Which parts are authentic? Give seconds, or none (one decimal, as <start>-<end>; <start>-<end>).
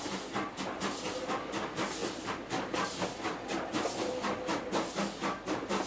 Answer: 0.0-5.9